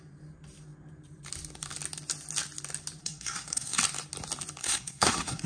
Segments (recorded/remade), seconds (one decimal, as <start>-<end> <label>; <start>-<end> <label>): 0.0-3.0 recorded; 3.0-3.8 remade; 3.8-4.6 recorded; 4.6-5.5 remade